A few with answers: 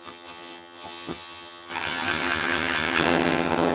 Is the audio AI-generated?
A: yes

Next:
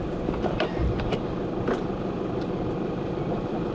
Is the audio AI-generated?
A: no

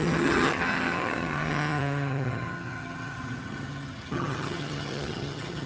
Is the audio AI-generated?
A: yes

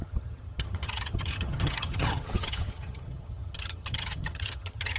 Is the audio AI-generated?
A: yes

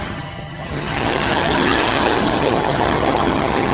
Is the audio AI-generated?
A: yes